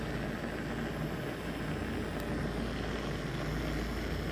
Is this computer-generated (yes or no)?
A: no